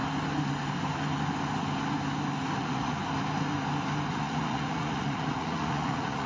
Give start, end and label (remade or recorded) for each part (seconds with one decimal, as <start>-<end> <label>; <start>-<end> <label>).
0.0-2.6 recorded; 2.6-3.0 remade; 3.0-4.1 recorded; 4.1-6.3 remade